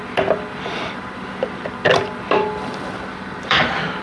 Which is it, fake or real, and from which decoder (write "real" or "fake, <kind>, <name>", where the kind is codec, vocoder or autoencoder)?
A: fake, vocoder, BigVGAN v2